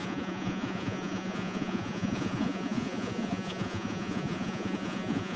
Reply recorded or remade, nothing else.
remade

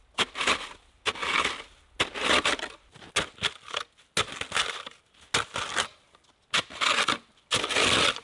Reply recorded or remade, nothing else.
recorded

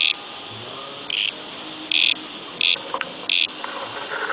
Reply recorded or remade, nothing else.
recorded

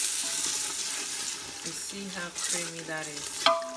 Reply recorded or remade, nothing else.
recorded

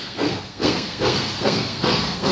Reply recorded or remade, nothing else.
remade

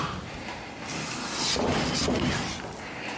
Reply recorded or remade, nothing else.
recorded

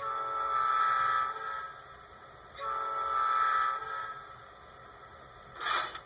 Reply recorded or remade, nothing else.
recorded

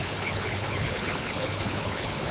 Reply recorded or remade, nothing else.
remade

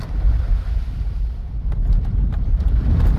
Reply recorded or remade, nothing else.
remade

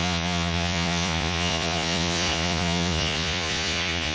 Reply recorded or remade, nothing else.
remade